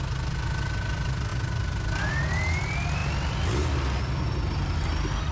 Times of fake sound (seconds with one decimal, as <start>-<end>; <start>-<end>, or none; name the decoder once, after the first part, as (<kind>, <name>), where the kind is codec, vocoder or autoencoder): none